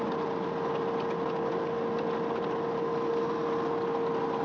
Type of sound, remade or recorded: recorded